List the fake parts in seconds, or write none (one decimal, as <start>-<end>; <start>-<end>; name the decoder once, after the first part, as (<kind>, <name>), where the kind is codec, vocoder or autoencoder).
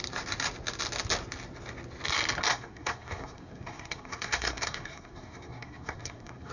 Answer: 2.5-6.5 (codec, SNAC)